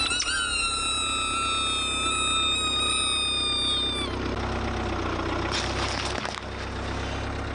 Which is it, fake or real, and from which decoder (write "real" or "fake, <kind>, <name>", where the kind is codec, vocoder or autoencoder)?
real